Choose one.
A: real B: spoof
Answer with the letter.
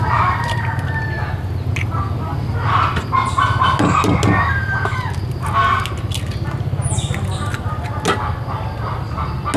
A